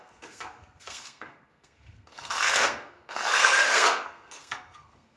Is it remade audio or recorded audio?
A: remade